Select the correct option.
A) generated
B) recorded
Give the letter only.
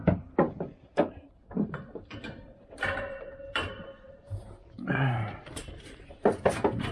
A